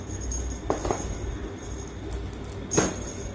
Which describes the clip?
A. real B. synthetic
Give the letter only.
A